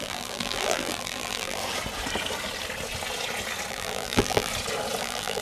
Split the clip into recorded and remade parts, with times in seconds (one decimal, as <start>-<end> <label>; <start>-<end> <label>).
0.0-1.6 remade; 1.6-3.7 recorded; 3.7-4.5 remade; 4.5-5.0 recorded; 5.0-5.4 remade